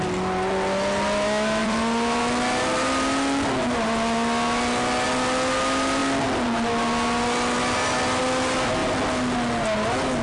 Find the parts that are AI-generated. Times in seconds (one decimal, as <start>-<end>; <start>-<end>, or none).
1.6-2.2